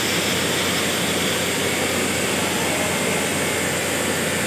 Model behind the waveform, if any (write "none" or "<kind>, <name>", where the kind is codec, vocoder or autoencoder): none